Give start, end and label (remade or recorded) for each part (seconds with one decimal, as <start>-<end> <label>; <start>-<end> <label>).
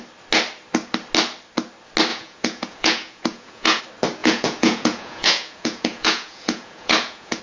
0.0-2.1 recorded; 2.1-3.8 remade; 3.8-4.2 recorded; 4.2-7.4 remade